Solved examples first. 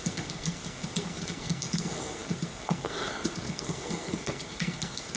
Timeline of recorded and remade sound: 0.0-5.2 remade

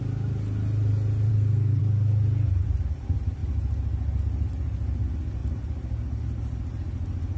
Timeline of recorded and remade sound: 0.0-1.3 recorded; 1.3-1.8 remade; 1.8-7.4 recorded

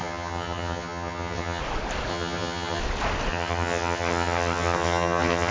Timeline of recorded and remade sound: 0.0-1.6 remade; 1.6-2.1 recorded; 2.1-2.8 remade; 2.8-3.3 recorded; 3.3-5.5 remade

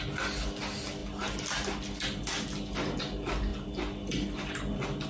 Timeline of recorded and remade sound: 0.0-5.1 recorded

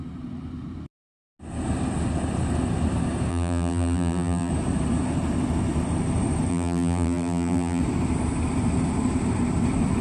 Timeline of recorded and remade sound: 0.0-3.3 recorded; 3.3-4.5 remade; 4.5-6.5 recorded; 6.5-7.8 remade; 7.8-10.0 recorded

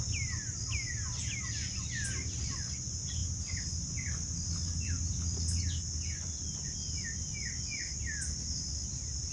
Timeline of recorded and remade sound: 0.0-9.3 recorded

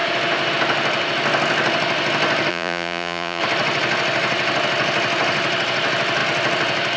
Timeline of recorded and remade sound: 0.0-2.5 recorded; 2.5-3.4 remade; 3.4-7.0 recorded

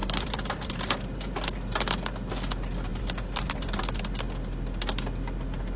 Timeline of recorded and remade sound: 0.0-0.7 remade; 0.7-2.9 recorded; 2.9-3.8 remade; 3.8-5.8 recorded